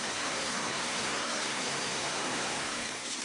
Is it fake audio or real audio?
fake